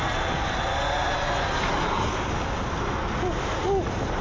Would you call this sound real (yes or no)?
yes